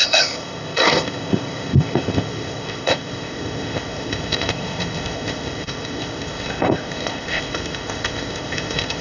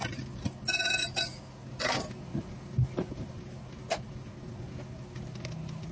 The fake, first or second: first